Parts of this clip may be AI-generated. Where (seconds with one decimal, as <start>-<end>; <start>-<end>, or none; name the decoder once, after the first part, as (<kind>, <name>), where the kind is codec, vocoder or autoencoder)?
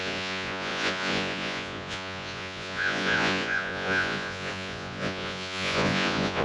0.0-6.4 (vocoder, Vocos)